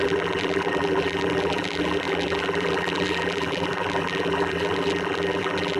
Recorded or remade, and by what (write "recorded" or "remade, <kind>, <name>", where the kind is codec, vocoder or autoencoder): remade, vocoder, BigVGAN v2